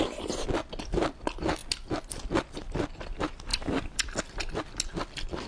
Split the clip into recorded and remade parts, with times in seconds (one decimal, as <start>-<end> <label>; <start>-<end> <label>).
0.0-5.5 recorded